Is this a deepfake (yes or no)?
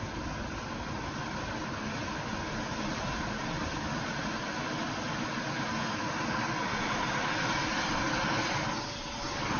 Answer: no